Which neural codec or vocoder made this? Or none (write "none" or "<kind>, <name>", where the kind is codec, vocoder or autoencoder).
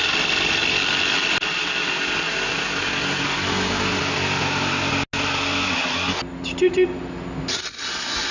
none